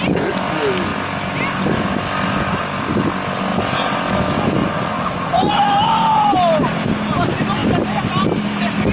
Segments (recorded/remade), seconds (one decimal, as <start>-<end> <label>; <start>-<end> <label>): 0.0-4.6 recorded; 4.6-5.5 remade; 5.5-8.9 recorded